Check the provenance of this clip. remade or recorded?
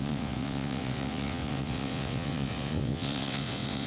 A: remade